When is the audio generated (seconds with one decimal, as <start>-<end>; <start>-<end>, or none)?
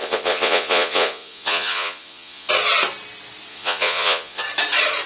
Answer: 0.0-2.5; 3.5-4.4